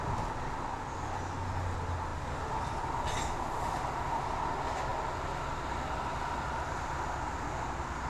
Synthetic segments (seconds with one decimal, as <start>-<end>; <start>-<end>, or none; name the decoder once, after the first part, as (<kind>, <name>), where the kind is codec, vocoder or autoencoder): none